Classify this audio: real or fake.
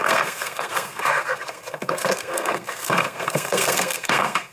fake